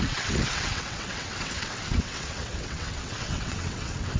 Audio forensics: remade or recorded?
remade